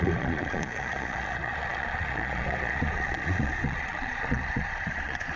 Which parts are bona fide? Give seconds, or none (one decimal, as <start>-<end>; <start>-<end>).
none